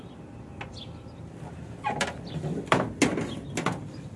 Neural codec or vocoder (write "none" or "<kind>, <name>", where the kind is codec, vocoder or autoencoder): none